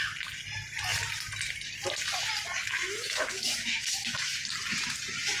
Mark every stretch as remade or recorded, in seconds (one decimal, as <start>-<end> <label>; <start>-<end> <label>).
0.0-2.6 recorded; 2.6-4.4 remade; 4.4-5.4 recorded